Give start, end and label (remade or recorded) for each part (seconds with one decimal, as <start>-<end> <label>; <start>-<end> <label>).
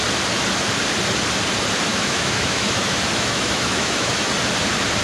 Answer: 0.0-1.9 recorded; 1.9-4.3 remade; 4.3-5.0 recorded